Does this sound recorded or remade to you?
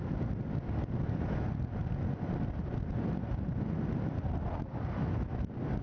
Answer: recorded